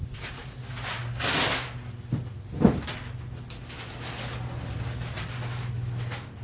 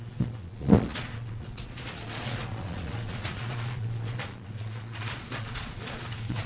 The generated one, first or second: second